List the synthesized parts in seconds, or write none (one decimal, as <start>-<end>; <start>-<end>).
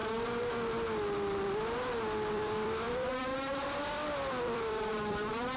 2.3-3.3; 4.4-5.6